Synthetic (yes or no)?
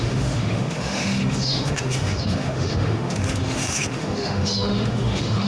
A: yes